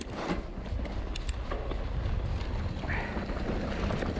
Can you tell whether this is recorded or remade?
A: recorded